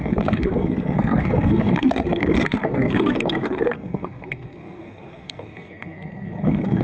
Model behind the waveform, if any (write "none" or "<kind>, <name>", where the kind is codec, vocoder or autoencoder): codec, SNAC